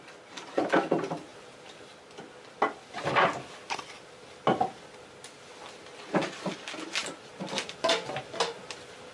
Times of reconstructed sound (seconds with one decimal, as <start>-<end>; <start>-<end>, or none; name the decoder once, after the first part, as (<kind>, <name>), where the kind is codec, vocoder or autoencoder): none